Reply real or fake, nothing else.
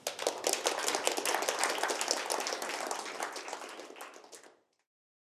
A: real